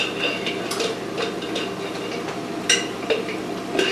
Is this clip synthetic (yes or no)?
no